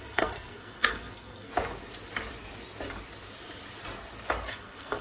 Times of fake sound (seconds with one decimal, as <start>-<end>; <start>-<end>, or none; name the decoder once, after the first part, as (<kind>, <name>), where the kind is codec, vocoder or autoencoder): 0.0-1.5 (codec, SNAC); 4.5-5.0